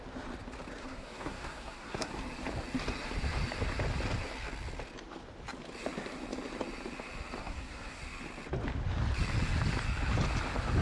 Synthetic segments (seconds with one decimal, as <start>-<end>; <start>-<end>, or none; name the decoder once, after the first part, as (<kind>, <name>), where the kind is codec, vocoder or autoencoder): 0.8-2.1 (codec, SNAC); 7.4-8.0